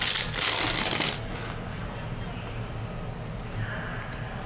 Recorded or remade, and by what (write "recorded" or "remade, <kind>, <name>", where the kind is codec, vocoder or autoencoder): recorded